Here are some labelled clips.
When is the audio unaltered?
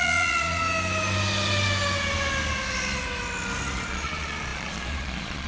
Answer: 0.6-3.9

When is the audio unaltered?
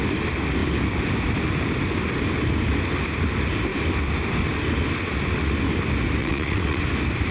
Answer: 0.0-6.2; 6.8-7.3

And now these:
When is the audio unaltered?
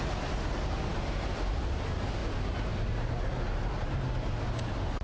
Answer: 0.0-5.0